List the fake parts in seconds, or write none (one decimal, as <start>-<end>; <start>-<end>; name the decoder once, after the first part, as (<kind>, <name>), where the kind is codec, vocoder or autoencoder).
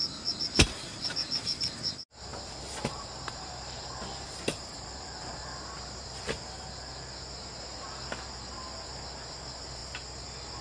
2.3-5.3 (vocoder, BigVGAN v2)